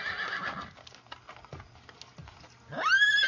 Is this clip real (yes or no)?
yes